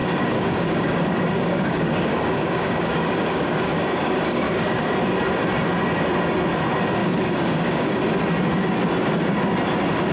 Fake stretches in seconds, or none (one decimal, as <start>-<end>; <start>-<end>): 0.0-4.9; 7.0-8.0